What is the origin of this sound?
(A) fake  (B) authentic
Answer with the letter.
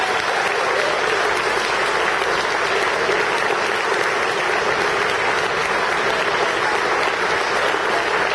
B